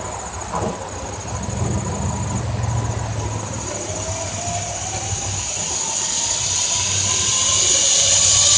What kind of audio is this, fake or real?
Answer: real